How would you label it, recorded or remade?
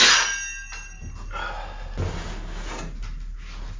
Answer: recorded